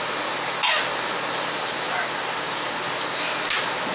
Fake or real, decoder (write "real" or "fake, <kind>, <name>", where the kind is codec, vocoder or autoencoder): real